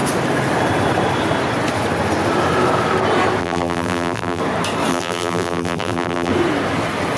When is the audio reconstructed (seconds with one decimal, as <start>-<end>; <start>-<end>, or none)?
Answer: 3.4-4.4; 4.9-6.3